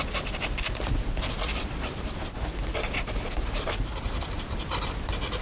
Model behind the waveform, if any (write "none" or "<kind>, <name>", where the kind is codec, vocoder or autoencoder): none